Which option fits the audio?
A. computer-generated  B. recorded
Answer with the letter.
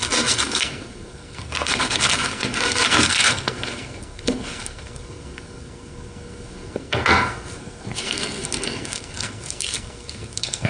A